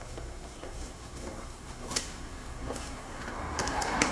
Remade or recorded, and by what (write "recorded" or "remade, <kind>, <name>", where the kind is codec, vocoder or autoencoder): remade, codec, SNAC